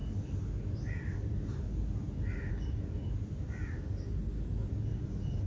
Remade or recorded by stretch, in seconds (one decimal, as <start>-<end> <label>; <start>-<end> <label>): 0.0-5.5 recorded